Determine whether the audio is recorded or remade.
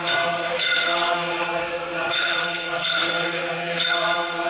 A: remade